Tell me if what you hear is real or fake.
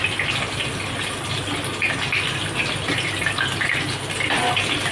real